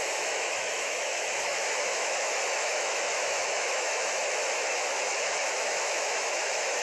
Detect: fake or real fake